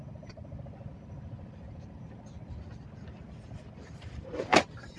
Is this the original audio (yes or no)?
no